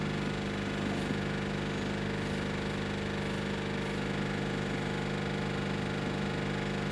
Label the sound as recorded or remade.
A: recorded